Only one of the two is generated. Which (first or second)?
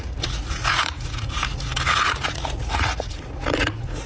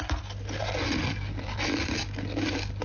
first